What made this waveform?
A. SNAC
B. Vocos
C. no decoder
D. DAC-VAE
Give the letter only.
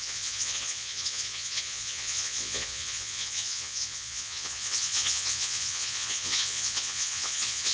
B